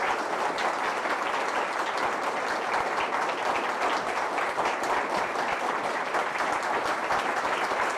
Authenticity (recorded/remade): recorded